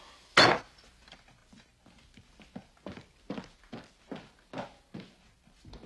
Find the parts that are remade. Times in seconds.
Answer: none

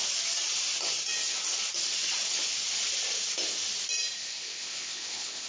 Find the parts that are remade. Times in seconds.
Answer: 4.2-5.5 (codec, ZipCodec)